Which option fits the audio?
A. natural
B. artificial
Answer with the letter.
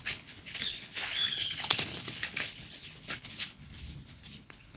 B